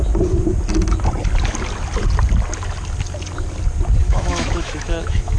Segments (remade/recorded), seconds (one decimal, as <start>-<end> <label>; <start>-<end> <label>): 0.0-4.0 recorded; 4.0-5.4 remade